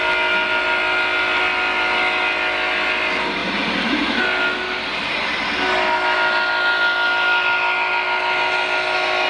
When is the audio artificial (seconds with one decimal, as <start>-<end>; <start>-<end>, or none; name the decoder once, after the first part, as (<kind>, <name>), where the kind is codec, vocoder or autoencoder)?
3.4-4.2 (vocoder, BigVGAN v2)